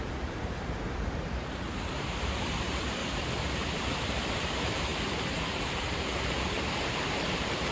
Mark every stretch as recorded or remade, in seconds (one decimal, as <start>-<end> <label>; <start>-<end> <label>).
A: 0.0-3.0 remade; 3.0-3.7 recorded; 3.7-7.7 remade